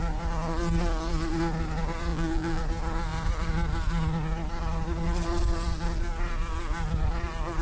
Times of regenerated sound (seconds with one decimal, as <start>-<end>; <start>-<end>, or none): 2.1-2.6